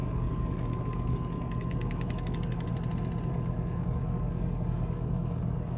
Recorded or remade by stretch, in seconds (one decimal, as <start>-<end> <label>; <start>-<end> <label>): 0.0-2.7 remade; 2.7-3.3 recorded; 3.3-5.8 remade